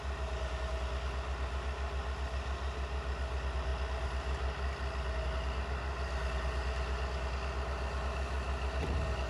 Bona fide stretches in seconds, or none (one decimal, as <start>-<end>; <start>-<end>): 0.0-9.3